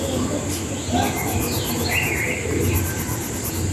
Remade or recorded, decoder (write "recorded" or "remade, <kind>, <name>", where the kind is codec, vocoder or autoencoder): recorded